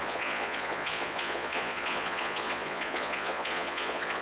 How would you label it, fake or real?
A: fake